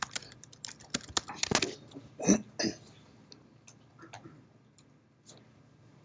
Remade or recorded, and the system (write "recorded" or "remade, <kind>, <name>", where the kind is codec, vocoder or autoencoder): recorded